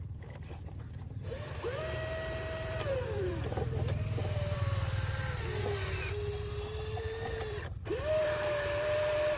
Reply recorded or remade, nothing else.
remade